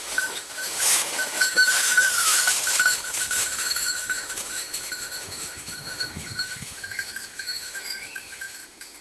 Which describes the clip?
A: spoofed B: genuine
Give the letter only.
A